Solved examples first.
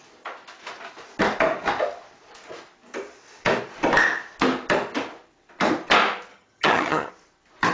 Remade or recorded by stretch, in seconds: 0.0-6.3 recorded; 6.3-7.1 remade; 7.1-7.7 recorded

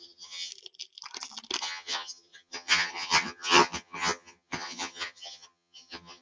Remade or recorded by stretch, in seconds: 0.0-0.5 remade; 0.5-1.6 recorded; 1.6-6.2 remade

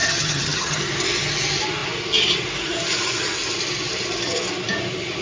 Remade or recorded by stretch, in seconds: 0.0-0.8 remade; 0.8-5.2 recorded

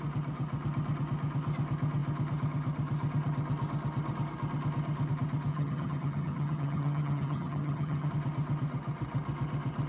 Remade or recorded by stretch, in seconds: 0.0-5.5 recorded; 5.5-8.1 remade; 8.1-9.9 recorded

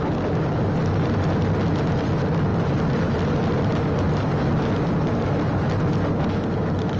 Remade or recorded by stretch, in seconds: 0.0-7.0 recorded

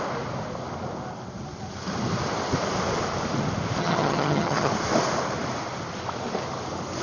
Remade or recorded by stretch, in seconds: 0.0-3.8 recorded; 3.8-4.7 remade; 4.7-7.0 recorded

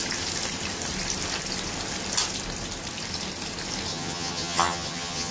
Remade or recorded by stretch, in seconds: 0.0-3.9 recorded; 3.9-5.3 remade

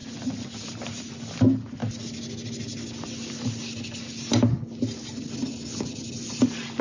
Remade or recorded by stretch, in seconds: 0.0-6.8 recorded